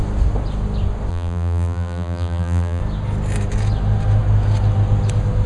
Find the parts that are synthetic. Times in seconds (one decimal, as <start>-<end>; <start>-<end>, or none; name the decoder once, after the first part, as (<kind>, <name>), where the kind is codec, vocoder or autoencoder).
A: 1.1-2.8 (vocoder, BigVGAN v2)

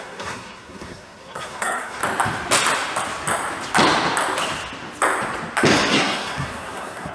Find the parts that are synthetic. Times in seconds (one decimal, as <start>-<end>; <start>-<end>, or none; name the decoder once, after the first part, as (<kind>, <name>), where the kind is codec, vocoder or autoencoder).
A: 0.0-2.0 (codec, SNAC); 5.9-7.1

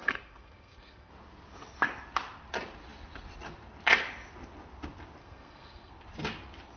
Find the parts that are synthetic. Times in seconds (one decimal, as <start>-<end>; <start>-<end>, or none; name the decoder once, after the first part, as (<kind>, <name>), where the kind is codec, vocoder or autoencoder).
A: 0.0-1.1 (codec, SNAC); 5.2-5.9

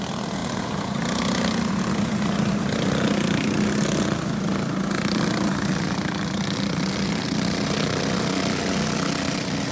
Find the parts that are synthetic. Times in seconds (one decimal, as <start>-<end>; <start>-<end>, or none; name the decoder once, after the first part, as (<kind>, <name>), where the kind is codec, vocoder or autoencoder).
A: none

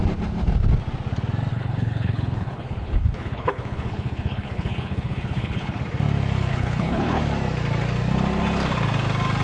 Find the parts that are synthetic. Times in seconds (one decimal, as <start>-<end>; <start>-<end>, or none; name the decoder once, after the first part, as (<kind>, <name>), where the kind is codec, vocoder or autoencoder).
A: 1.5-5.8 (codec, HILCodec); 6.5-7.2

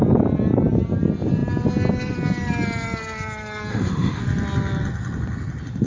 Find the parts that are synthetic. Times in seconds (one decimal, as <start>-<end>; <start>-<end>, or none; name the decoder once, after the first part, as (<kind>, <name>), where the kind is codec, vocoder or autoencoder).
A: 3.7-4.2 (autoencoder, DAC-VAE)